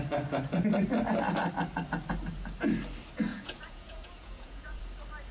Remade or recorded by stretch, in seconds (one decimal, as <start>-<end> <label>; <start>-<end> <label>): 0.0-3.3 recorded; 3.3-4.8 remade; 4.8-5.3 recorded